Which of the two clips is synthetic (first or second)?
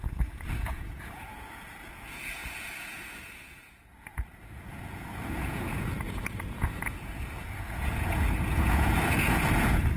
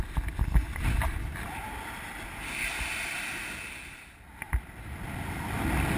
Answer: first